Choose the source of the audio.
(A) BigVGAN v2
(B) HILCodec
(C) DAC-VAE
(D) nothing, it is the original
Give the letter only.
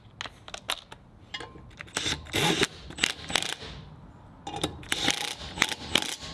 D